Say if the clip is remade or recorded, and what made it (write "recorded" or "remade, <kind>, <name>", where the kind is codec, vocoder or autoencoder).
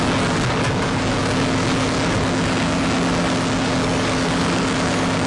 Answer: remade, codec, DAC